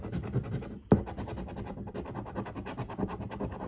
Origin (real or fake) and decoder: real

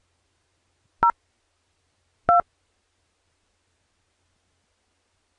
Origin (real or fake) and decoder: real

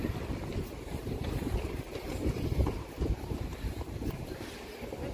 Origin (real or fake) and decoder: fake, vocoder, BigVGAN v2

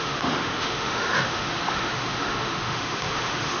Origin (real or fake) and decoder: fake, autoencoder, DAC-VAE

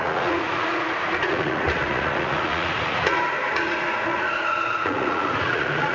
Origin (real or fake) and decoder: fake, vocoder, Vocos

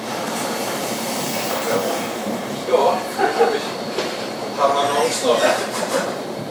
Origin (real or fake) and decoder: fake, vocoder, BigVGAN v2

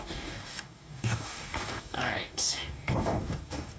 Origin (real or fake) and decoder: fake, codec, DAC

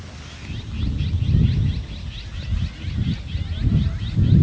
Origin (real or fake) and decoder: real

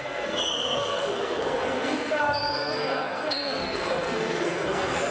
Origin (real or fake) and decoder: fake, codec, SNAC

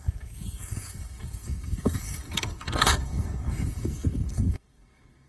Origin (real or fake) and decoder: fake, codec, SNAC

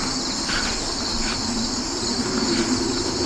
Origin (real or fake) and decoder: real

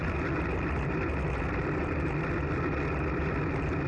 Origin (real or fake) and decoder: real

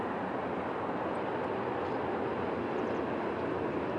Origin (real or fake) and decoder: real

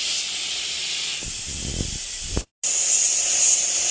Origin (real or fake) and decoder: real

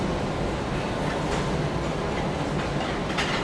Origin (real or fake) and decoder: real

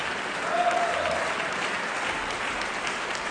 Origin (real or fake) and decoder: fake, vocoder, BigVGAN v2